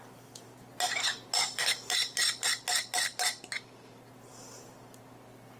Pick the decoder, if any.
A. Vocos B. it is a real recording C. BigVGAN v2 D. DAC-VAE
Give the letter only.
B